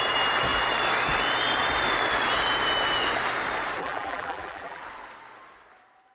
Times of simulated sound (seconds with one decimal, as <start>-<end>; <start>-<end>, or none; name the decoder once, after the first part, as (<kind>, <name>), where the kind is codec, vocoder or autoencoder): 3.8-4.8 (vocoder, BigVGAN v2)